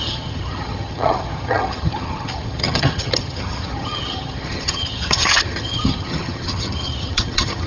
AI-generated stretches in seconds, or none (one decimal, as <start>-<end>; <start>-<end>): 0.0-7.7